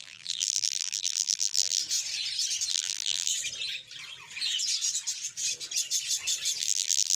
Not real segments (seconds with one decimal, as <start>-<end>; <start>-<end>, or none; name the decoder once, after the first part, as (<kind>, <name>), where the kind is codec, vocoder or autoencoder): 0.0-1.8 (vocoder, BigVGAN v2); 2.7-3.3; 6.6-7.2